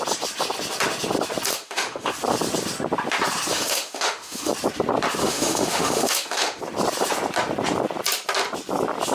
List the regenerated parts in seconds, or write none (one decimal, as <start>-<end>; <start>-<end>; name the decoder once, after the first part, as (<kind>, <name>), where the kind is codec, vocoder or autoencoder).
1.5-2.1 (autoencoder, DAC-VAE); 3.5-4.5; 5.2-6.6